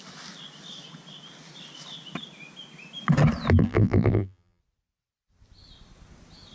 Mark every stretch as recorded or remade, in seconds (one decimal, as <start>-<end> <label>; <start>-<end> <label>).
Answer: 0.0-3.6 recorded; 3.6-4.6 remade; 4.6-6.5 recorded